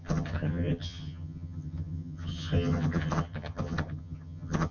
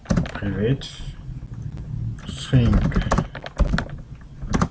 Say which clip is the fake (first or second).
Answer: first